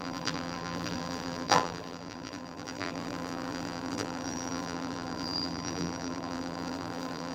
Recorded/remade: remade